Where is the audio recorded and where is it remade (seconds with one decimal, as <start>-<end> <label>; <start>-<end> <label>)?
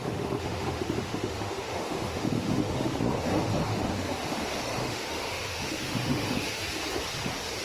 0.0-3.0 remade; 3.0-4.8 recorded; 4.8-6.6 remade; 6.6-7.6 recorded